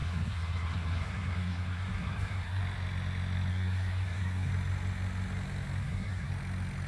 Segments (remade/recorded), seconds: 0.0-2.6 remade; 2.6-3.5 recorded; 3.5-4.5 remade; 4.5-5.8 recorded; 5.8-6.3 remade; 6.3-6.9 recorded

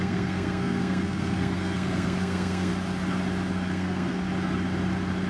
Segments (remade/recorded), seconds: 0.0-2.7 remade; 2.7-3.5 recorded; 3.5-4.2 remade; 4.2-5.3 recorded

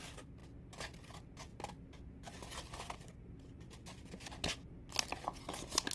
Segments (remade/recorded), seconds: 0.0-5.9 recorded

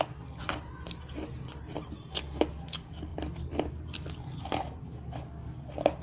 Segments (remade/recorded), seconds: 0.0-6.0 recorded